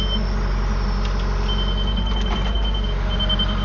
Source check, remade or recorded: recorded